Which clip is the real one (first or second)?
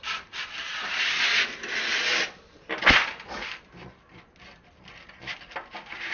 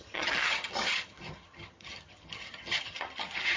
first